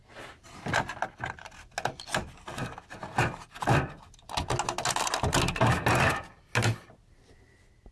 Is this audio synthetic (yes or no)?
no